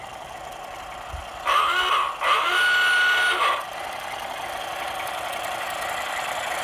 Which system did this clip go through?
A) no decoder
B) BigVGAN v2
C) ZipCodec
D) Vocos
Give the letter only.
A